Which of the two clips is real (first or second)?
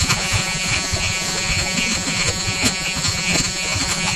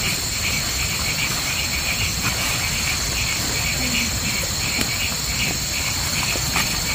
second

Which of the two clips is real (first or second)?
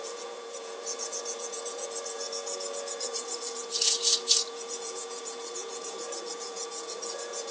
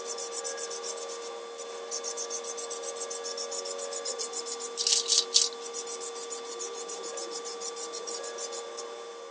second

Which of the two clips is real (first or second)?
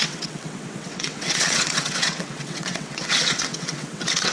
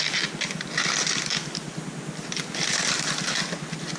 second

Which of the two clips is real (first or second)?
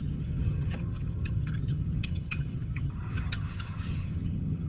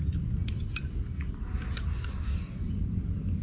second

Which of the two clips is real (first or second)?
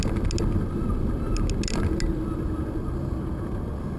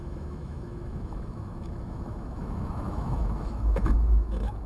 first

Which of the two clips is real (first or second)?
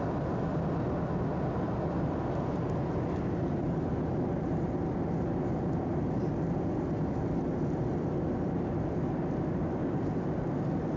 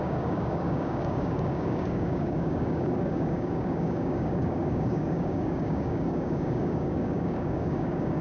first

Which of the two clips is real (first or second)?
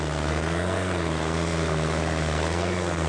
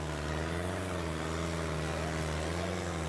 second